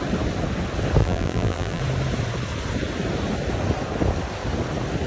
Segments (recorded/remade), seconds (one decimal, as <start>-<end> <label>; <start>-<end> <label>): 0.0-1.0 recorded; 1.0-1.8 remade; 1.8-5.1 recorded